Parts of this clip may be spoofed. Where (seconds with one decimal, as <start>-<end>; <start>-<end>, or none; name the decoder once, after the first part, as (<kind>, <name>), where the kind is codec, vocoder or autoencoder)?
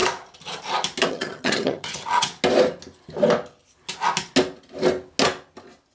1.1-2.3 (vocoder, HiFi-GAN)